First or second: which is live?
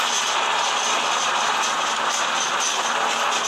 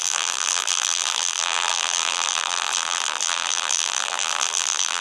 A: first